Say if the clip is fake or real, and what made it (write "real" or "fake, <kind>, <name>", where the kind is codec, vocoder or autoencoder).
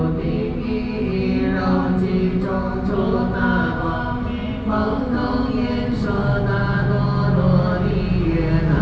real